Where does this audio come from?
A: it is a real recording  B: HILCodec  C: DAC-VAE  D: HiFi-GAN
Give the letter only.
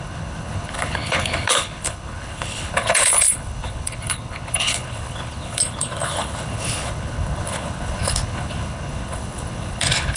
B